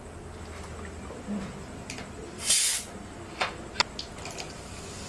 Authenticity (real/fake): real